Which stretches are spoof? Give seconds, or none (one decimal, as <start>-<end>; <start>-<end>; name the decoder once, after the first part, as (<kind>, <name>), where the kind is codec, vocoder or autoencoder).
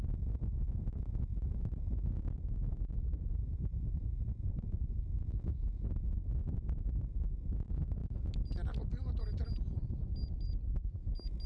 3.1-5.0 (vocoder, BigVGAN v2)